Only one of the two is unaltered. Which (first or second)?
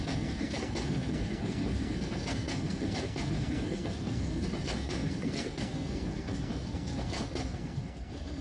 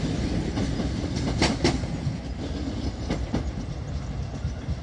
second